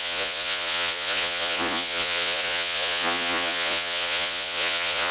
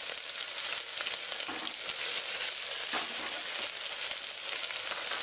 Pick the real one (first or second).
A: second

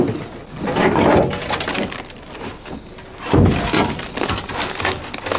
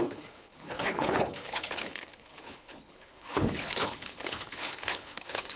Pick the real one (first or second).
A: first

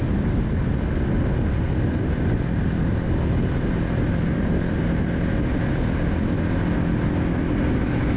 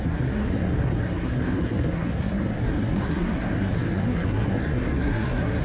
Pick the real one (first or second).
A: first